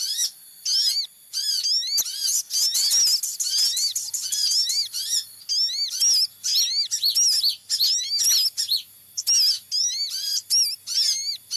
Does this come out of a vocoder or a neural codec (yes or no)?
no